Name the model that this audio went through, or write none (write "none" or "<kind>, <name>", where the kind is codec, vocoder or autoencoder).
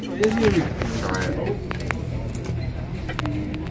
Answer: none